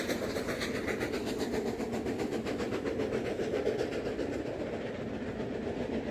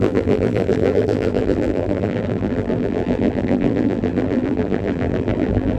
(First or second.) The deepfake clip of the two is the second